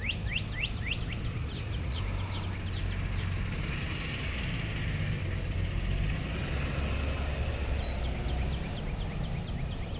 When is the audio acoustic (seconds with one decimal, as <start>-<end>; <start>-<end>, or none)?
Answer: 0.0-1.4; 2.0-10.0

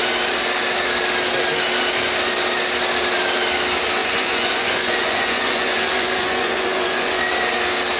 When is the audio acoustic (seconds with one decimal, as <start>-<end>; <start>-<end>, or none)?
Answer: 0.0-4.0; 7.2-8.0

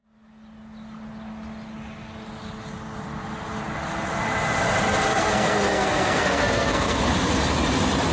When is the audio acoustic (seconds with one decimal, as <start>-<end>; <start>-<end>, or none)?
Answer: 0.0-5.1; 7.0-8.1

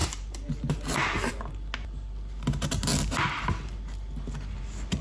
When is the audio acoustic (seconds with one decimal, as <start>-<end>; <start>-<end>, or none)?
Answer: 1.5-5.0